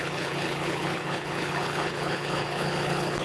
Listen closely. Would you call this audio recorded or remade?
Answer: remade